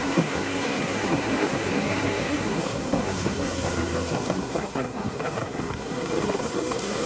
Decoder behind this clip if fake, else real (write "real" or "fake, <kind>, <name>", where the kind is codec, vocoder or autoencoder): fake, codec, SNAC